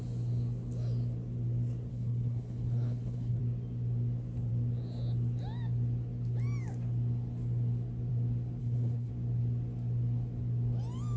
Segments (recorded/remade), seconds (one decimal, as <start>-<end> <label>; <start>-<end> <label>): 0.0-1.9 recorded; 1.9-3.4 remade; 3.4-8.6 recorded; 8.6-9.1 remade; 9.1-11.2 recorded